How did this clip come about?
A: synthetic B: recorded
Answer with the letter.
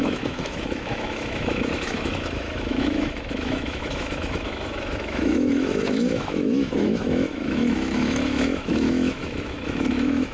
A